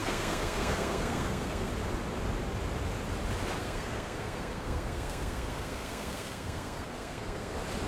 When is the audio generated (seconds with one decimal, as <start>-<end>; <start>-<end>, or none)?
0.0-1.7; 3.6-7.5